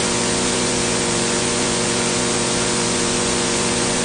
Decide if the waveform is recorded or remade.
remade